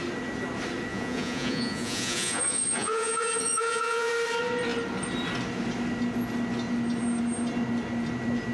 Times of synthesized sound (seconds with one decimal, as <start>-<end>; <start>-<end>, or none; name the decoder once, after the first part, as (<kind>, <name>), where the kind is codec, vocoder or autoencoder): 0.9-4.1 (vocoder, Vocos)

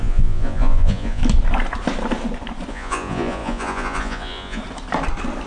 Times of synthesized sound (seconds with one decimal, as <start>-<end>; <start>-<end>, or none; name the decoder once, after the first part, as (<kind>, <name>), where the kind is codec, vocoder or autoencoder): 0.0-1.2 (vocoder, Vocos); 2.7-4.6

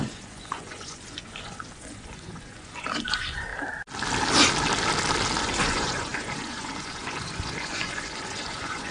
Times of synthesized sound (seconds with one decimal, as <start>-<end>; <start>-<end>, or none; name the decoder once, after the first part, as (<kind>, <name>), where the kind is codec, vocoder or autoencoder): 0.0-3.5 (vocoder, Vocos); 5.4-8.9

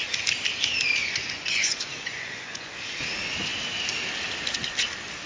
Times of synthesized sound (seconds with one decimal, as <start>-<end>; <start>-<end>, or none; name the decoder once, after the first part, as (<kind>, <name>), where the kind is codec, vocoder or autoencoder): 1.0-2.7 (vocoder, Vocos)